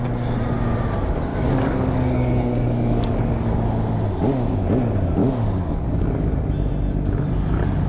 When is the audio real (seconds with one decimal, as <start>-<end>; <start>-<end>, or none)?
0.0-1.3; 3.7-5.2; 6.3-7.9